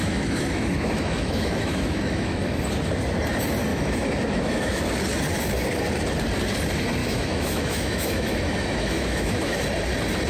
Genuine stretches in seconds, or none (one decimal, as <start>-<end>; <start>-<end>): 2.6-3.7; 4.8-7.0; 9.6-10.3